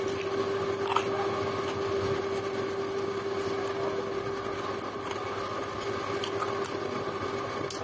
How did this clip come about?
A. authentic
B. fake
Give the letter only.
A